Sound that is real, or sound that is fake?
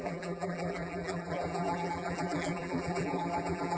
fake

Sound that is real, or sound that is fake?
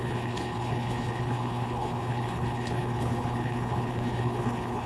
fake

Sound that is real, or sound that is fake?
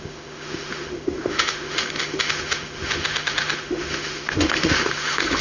fake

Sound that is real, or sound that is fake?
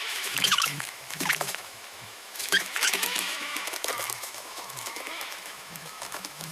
fake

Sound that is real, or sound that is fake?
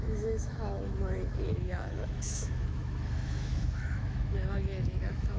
fake